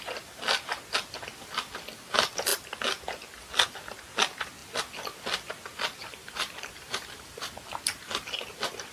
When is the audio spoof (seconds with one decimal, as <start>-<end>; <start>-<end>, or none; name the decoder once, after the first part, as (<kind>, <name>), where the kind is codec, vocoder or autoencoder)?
6.0-7.5 (vocoder, BigVGAN v2)